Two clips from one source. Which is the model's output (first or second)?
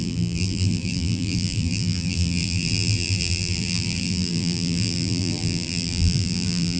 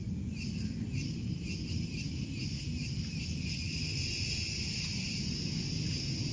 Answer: first